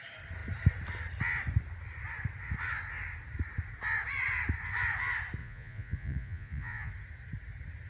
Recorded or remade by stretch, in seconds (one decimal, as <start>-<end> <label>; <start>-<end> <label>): 0.0-5.4 recorded; 5.4-6.9 remade; 6.9-7.9 recorded